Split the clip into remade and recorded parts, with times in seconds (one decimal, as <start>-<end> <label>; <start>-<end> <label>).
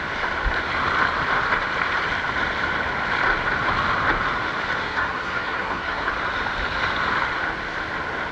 0.0-4.8 recorded; 4.8-6.1 remade; 6.1-8.3 recorded